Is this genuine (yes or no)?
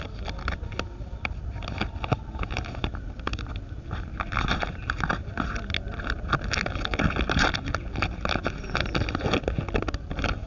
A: yes